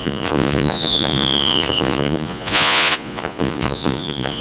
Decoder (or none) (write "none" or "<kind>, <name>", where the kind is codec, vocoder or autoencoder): vocoder, Vocos